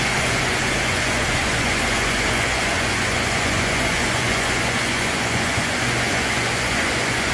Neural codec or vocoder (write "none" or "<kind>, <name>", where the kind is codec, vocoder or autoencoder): vocoder, Vocos